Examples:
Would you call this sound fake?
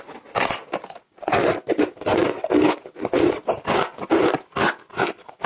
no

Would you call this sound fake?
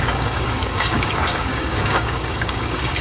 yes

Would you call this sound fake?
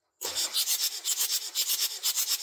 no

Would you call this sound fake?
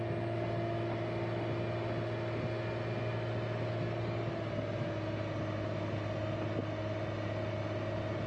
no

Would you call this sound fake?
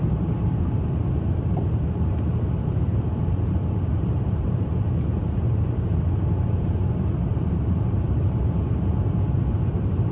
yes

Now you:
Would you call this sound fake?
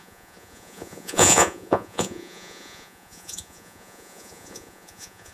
yes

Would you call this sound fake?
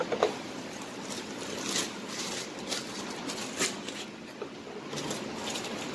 no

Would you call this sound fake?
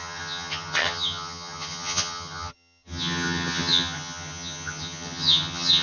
yes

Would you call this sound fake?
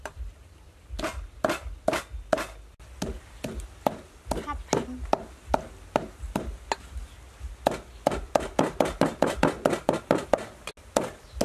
no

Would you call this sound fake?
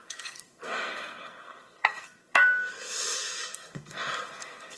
yes